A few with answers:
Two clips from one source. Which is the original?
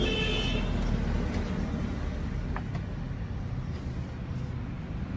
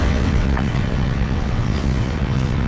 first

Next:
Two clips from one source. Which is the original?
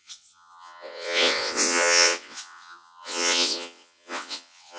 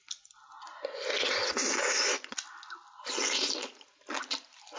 second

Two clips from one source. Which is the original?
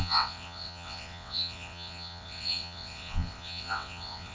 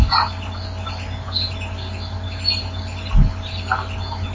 second